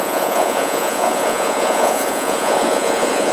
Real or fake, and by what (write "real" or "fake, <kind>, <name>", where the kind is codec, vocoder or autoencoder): fake, vocoder, Vocos